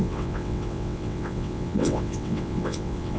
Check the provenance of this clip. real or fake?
fake